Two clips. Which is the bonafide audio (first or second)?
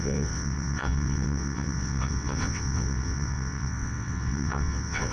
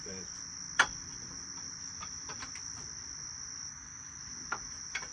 second